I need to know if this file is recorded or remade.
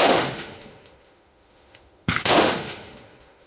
remade